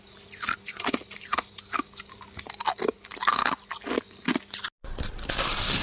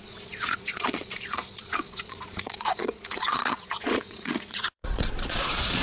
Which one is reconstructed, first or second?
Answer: second